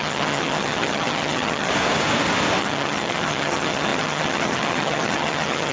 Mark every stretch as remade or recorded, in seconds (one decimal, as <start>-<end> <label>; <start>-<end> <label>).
0.0-1.7 remade; 1.7-2.6 recorded; 2.6-5.7 remade